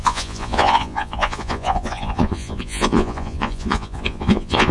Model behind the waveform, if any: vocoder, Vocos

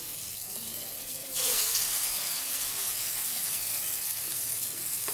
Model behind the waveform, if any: codec, SNAC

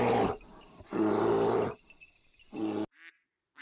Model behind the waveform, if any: none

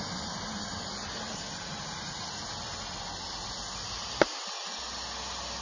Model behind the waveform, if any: none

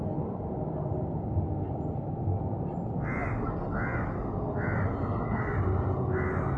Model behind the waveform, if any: none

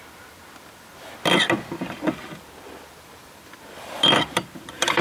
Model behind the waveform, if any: vocoder, BigVGAN v2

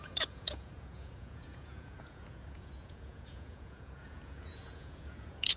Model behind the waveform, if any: vocoder, Vocos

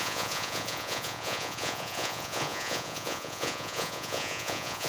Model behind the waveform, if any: vocoder, Vocos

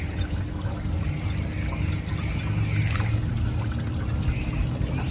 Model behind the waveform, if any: none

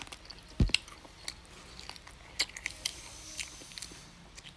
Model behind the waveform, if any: none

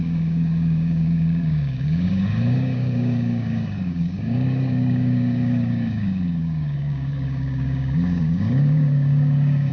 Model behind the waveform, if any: codec, DAC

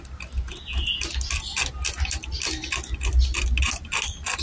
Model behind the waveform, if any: none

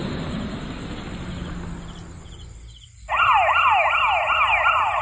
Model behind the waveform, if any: none